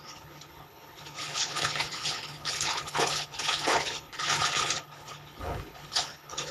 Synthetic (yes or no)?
yes